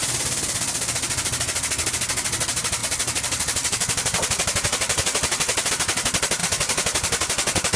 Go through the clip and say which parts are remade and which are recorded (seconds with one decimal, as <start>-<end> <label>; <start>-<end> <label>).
0.0-2.8 recorded; 2.8-5.7 remade; 5.7-6.4 recorded; 6.4-7.8 remade